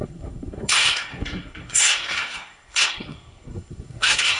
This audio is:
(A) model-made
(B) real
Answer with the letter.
A